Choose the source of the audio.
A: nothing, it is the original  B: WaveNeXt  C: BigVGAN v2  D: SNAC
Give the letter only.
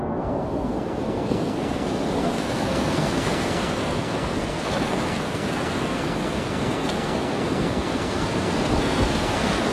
D